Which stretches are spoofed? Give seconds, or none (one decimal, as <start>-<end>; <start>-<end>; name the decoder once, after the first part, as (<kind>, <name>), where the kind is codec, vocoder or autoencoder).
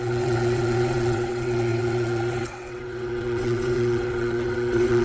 0.0-5.0 (vocoder, WaveNeXt)